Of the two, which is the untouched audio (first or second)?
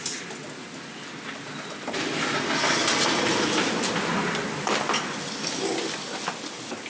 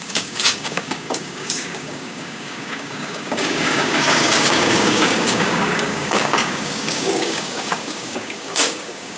first